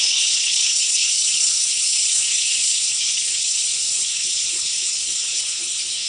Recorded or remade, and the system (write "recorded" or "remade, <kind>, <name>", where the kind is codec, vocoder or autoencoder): remade, codec, HILCodec